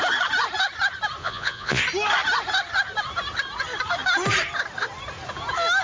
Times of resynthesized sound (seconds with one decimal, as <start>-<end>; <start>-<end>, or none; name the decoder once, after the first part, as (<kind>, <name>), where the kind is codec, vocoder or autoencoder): 1.2-1.8 (vocoder, Vocos)